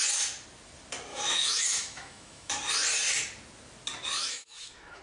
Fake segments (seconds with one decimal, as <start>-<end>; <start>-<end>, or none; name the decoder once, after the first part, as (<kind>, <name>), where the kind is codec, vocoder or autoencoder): 1.1-2.7 (autoencoder, DAC-VAE); 4.2-5.0